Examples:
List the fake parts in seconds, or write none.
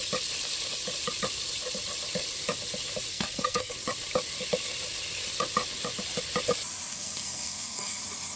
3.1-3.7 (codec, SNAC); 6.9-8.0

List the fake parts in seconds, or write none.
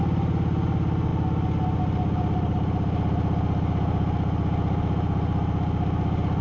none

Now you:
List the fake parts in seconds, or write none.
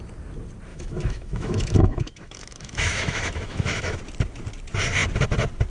0.7-4.0 (autoencoder, DAC-VAE)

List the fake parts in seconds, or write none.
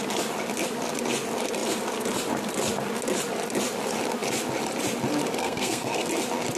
5.4-6.1 (codec, SNAC)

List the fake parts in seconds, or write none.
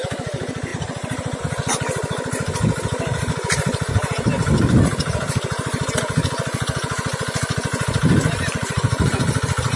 0.7-1.4 (vocoder, BigVGAN v2); 3.1-5.9; 7.7-9.1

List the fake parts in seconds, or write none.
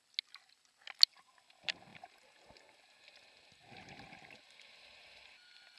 none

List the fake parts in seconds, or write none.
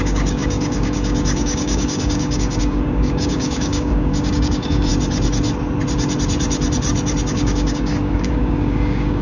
0.0-4.9 (codec, DAC); 7.3-9.2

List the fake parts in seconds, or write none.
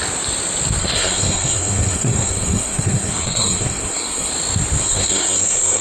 0.8-4.3 (codec, SNAC); 4.8-5.8